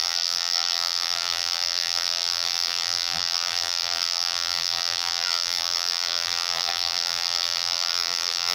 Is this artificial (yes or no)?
yes